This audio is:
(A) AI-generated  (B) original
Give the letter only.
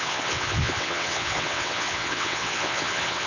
A